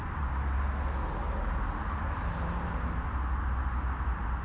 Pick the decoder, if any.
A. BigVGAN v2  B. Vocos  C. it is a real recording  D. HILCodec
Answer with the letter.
C